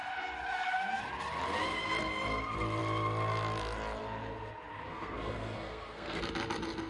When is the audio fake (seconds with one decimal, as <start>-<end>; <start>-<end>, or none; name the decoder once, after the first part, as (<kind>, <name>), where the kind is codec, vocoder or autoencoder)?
4.9-6.2 (codec, SNAC)